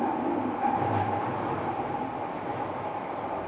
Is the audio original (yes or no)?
yes